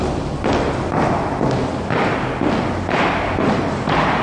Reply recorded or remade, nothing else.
recorded